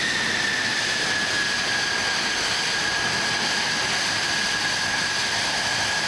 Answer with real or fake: real